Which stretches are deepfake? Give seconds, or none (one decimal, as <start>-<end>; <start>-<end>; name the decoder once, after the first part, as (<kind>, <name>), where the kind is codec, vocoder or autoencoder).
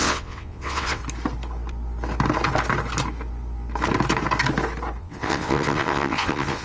0.0-1.0 (vocoder, WaveNeXt); 5.0-6.6